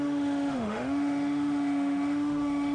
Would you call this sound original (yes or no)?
no